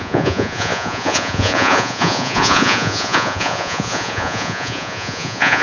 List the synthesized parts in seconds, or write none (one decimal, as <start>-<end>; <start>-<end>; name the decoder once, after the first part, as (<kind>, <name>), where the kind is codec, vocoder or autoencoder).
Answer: 0.0-5.6 (vocoder, Vocos)